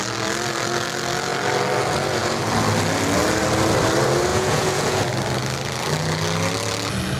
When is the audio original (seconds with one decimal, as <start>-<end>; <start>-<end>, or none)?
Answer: 0.0-4.3; 5.0-7.2